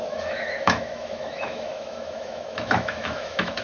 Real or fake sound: fake